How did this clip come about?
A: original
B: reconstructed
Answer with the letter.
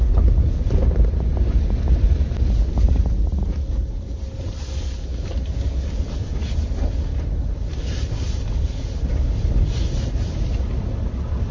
A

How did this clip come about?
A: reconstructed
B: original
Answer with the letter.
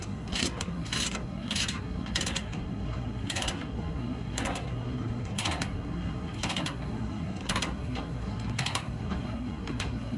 A